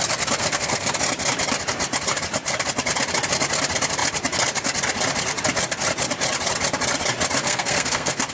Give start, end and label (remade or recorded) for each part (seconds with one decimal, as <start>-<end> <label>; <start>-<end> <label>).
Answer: 0.0-0.4 recorded; 0.4-0.9 remade; 0.9-7.4 recorded; 7.4-8.3 remade